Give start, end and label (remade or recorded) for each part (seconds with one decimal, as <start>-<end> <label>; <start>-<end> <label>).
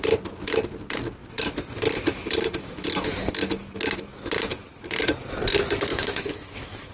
0.0-5.9 recorded; 5.9-6.9 remade